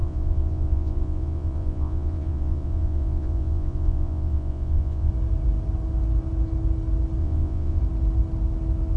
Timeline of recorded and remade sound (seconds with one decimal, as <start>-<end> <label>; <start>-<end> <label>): 0.0-5.1 remade; 5.1-7.2 recorded; 7.2-7.8 remade; 7.8-9.0 recorded